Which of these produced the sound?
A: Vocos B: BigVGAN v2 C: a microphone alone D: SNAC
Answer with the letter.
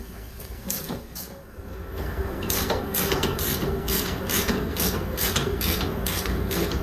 D